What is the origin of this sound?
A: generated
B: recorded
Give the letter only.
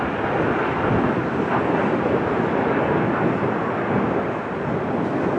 B